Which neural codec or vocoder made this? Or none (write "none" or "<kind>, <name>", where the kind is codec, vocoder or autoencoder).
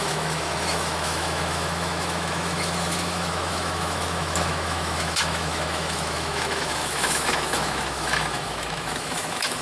autoencoder, DAC-VAE